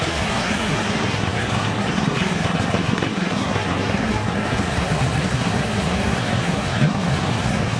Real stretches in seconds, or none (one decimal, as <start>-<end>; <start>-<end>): none